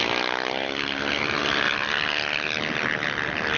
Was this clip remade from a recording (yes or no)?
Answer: no